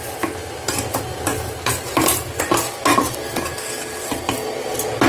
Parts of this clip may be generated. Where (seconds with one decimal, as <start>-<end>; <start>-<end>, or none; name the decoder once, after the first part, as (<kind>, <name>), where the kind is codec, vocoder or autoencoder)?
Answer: 1.3-2.4 (vocoder, BigVGAN v2)